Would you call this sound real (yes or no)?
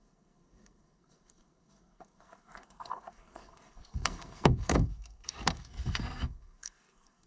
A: no